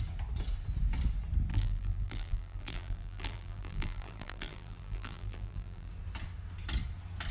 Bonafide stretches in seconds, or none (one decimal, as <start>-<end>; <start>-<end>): 0.0-1.5; 5.9-7.3